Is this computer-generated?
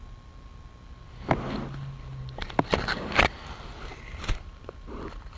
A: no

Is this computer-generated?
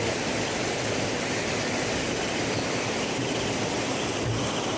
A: no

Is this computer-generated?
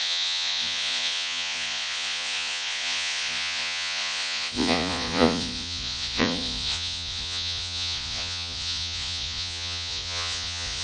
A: yes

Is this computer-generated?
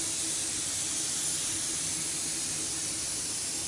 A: no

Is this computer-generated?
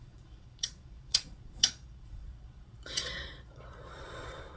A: yes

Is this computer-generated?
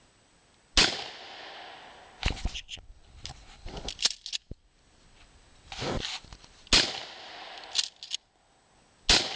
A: no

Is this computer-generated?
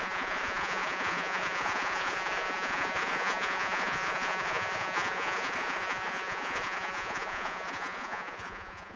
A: yes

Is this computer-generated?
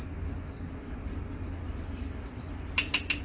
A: no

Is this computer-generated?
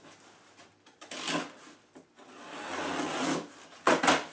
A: no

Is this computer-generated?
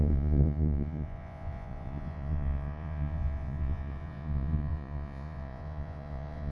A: yes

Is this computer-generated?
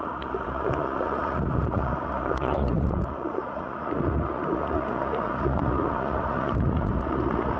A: yes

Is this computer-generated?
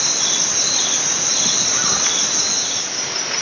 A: no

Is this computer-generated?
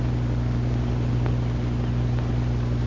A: no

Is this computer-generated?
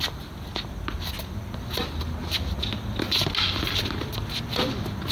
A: no